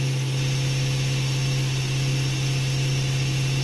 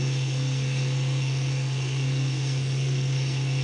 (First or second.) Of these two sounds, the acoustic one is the first